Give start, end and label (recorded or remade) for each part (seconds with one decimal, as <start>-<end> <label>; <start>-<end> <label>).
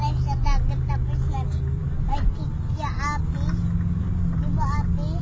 0.0-5.2 recorded